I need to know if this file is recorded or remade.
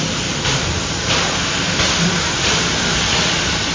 recorded